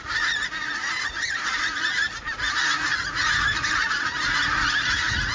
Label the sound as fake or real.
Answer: fake